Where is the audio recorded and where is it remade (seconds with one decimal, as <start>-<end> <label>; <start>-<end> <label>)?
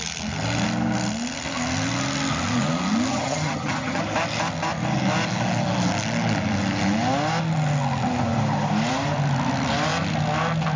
0.0-3.1 recorded; 3.1-4.0 remade; 4.0-10.8 recorded